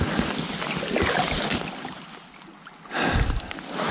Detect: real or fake real